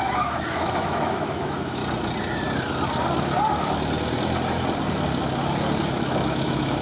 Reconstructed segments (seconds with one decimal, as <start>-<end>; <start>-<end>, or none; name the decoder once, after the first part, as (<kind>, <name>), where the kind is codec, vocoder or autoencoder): 0.0-1.8 (autoencoder, DAC-VAE); 5.9-6.8